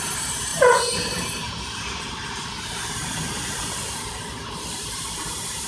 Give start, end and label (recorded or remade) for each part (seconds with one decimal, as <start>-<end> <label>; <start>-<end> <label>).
0.0-5.7 remade